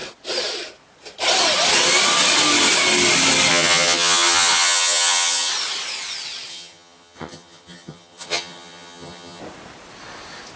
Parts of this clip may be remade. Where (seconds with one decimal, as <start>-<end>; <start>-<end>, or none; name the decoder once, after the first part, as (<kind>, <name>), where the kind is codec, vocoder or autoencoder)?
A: 3.5-5.5 (vocoder, HiFi-GAN); 6.5-9.4

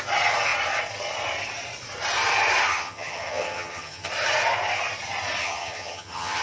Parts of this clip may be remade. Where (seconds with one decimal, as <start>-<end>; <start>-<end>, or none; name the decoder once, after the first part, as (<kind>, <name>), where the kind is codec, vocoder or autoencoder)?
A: 2.7-4.1 (vocoder, HiFi-GAN); 5.4-6.4

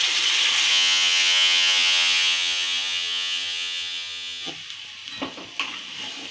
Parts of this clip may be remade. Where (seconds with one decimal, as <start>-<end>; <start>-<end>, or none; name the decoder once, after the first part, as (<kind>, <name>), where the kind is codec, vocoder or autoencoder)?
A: 0.7-4.5 (vocoder, HiFi-GAN)